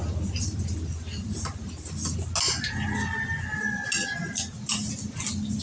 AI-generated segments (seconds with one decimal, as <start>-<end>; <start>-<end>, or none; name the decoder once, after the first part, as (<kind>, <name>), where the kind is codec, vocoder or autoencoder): none